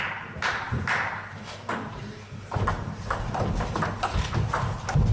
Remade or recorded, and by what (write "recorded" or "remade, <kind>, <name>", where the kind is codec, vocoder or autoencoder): recorded